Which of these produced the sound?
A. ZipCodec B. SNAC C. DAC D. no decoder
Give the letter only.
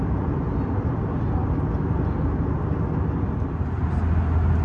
D